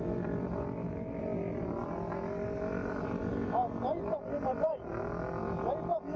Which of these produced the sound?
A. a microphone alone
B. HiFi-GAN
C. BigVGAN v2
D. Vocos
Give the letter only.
A